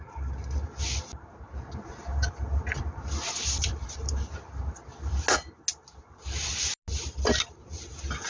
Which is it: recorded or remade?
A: recorded